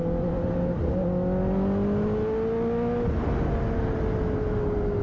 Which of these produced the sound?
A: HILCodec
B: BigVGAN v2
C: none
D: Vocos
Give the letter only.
C